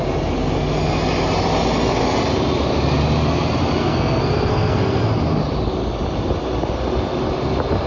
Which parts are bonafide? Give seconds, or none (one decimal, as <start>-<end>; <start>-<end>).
0.0-3.8; 5.0-7.9